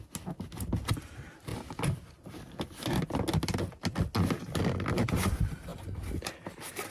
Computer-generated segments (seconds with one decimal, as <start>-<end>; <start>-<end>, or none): none